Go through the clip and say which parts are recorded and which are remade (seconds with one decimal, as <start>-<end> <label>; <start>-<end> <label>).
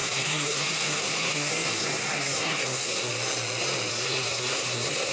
0.0-3.1 remade; 3.1-3.9 recorded; 3.9-5.1 remade